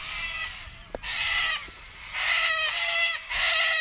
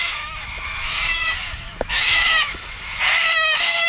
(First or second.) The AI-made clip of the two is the second